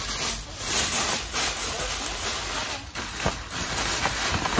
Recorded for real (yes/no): yes